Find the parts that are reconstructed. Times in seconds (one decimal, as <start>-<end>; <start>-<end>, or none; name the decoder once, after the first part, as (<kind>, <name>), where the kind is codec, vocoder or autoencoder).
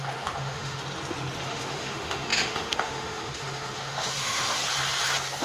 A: 0.0-0.8 (autoencoder, DAC-VAE); 1.4-4.6